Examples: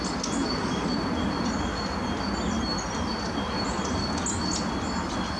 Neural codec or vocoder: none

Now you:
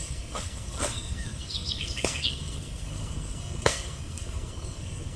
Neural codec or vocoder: codec, SNAC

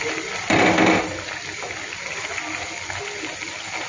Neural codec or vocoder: none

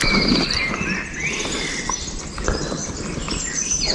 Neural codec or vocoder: none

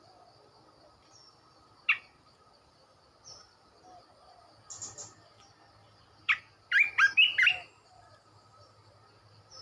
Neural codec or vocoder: none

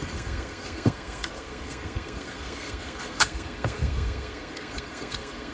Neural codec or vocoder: codec, SNAC